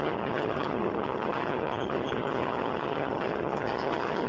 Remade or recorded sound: remade